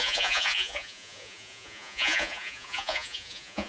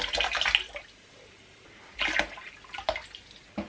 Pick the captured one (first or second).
second